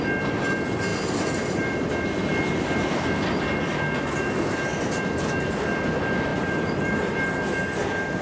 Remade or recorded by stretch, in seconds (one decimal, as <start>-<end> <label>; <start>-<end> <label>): 0.0-0.9 recorded; 0.9-1.9 remade; 1.9-6.3 recorded; 6.3-7.1 remade; 7.1-8.2 recorded

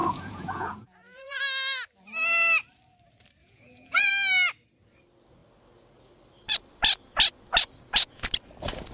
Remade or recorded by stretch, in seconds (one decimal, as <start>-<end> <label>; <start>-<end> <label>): 0.0-1.4 remade; 1.4-3.4 recorded; 3.4-4.1 remade; 4.1-8.9 recorded

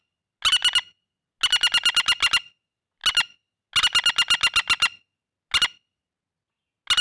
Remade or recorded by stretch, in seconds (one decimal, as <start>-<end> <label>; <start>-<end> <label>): 0.0-7.0 recorded

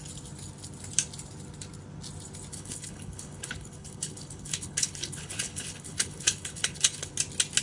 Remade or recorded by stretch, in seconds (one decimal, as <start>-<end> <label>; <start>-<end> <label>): 0.0-2.5 recorded; 2.5-7.1 remade; 7.1-7.6 recorded

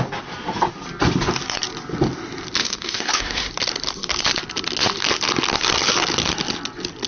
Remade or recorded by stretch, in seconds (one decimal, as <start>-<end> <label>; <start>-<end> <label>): 0.0-2.6 recorded; 2.6-3.5 remade; 3.5-7.1 recorded

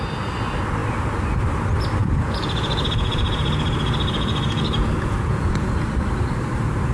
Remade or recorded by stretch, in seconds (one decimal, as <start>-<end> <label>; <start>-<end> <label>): 0.0-2.0 recorded; 2.0-5.7 remade; 5.7-6.9 recorded

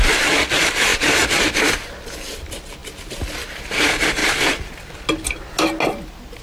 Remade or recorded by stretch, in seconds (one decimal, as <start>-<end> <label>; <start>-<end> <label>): 0.0-4.2 recorded; 4.2-5.5 remade; 5.5-6.4 recorded